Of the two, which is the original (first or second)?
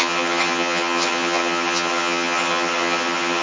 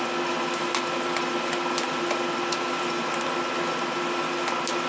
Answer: second